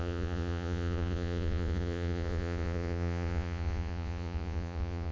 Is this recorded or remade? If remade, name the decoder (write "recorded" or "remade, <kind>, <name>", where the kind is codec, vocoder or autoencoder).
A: remade, vocoder, Vocos